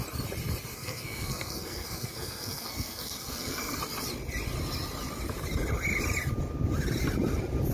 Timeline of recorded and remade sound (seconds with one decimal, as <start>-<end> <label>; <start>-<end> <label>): 0.0-0.7 recorded; 0.7-3.8 remade; 3.8-7.7 recorded